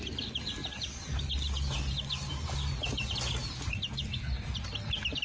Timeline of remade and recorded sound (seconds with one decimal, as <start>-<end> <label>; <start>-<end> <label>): 0.0-5.2 recorded